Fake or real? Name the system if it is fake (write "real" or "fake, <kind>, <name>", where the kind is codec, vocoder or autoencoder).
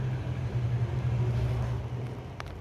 real